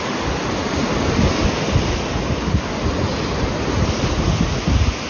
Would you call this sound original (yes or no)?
yes